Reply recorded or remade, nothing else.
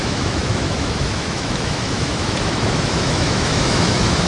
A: remade